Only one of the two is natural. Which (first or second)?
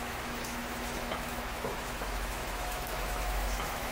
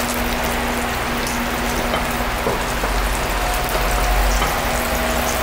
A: second